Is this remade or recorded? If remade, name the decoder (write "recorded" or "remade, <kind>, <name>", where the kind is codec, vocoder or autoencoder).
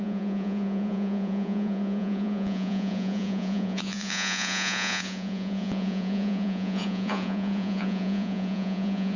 remade, vocoder, Vocos